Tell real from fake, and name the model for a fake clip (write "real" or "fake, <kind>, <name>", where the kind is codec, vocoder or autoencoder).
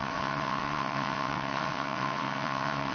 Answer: fake, vocoder, WaveNeXt